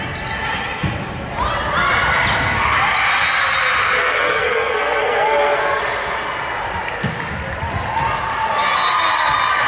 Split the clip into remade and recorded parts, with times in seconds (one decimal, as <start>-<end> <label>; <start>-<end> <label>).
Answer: 0.0-4.0 recorded; 4.0-5.8 remade; 5.8-9.7 recorded